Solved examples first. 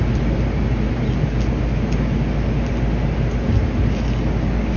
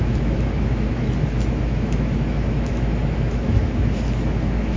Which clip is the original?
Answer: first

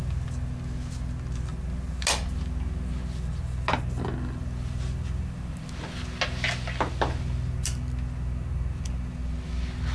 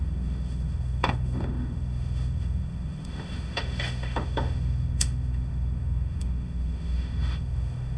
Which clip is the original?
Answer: first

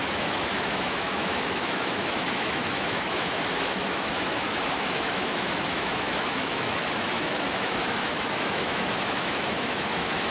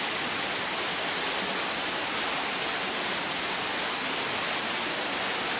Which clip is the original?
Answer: second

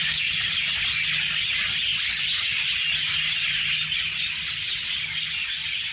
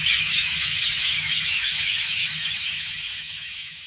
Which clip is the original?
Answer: first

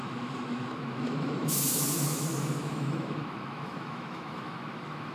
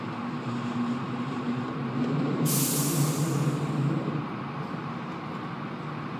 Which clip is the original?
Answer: second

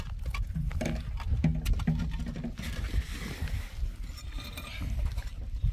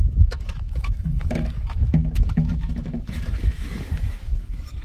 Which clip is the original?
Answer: first